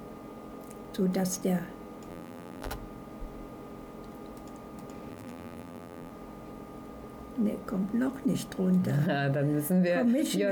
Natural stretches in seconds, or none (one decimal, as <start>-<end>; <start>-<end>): 0.0-2.1; 2.7-5.1; 6.1-10.5